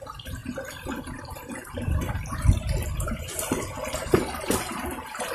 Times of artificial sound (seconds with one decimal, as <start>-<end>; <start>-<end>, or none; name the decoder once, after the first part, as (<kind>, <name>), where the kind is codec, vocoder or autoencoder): 0.0-5.3 (vocoder, BigVGAN v2)